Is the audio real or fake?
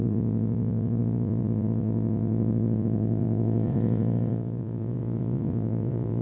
fake